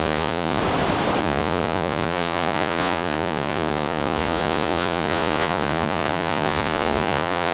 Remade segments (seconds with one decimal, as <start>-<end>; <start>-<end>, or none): 0.0-0.6; 1.2-7.5